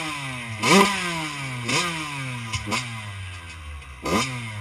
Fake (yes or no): no